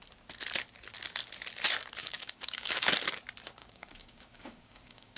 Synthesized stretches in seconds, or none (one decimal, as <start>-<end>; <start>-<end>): 2.0-2.9; 3.6-5.2